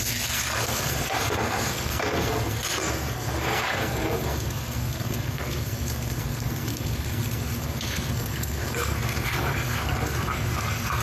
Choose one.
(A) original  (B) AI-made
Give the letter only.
B